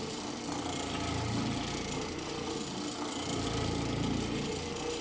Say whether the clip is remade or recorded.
recorded